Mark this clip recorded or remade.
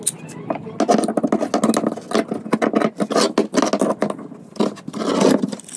recorded